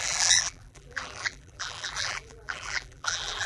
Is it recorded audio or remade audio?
remade